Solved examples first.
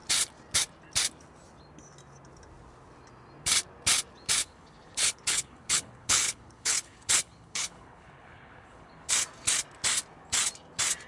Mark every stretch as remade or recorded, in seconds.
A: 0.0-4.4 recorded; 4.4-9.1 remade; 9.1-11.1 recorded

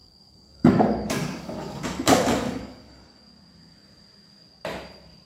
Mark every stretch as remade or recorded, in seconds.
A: 0.0-3.2 remade; 3.2-5.3 recorded

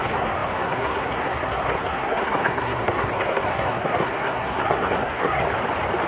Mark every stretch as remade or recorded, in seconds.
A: 0.0-5.4 remade; 5.4-6.1 recorded